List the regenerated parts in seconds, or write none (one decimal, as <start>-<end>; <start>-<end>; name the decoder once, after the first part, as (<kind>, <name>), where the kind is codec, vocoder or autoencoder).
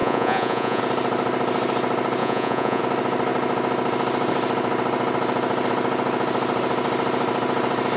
0.0-0.8 (vocoder, Vocos); 2.2-2.8